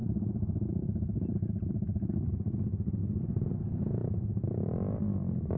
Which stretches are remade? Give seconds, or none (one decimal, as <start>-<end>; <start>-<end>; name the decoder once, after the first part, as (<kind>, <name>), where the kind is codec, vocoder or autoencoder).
0.0-2.3 (vocoder, BigVGAN v2); 3.0-3.5; 4.0-4.6